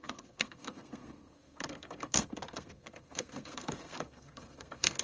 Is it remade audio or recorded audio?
remade